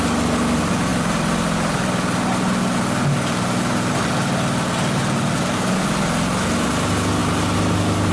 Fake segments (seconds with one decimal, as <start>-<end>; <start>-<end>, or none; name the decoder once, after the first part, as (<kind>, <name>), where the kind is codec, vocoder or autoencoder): none